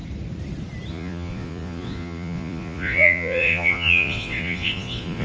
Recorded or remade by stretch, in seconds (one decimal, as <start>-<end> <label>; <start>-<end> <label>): 0.0-0.9 recorded; 0.9-5.2 remade

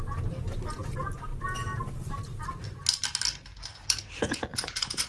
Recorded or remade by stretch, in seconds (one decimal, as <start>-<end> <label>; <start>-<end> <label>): 0.0-4.5 recorded; 4.5-5.1 remade

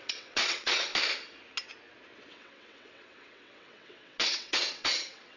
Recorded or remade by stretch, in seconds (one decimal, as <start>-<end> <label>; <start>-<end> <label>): 0.0-0.9 remade; 0.9-2.3 recorded; 2.3-5.4 remade